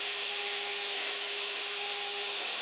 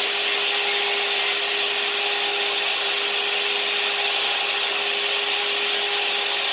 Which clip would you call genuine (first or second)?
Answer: second